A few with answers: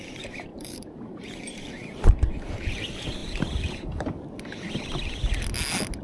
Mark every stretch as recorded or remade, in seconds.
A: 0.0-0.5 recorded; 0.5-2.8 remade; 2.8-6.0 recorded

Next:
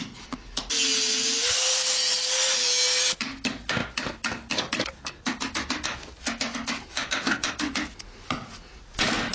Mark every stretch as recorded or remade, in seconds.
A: 0.0-3.8 recorded; 3.8-4.7 remade; 4.7-9.3 recorded

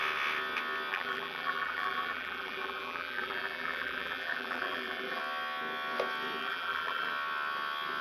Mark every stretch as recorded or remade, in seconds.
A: 0.0-0.9 recorded; 0.9-5.2 remade; 5.2-6.4 recorded; 6.4-7.1 remade; 7.1-8.0 recorded